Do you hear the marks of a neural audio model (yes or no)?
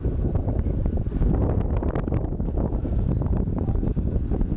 yes